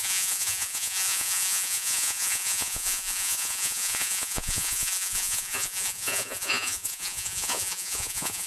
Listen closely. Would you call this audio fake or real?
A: fake